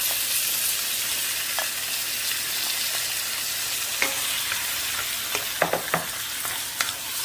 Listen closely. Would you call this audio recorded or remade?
recorded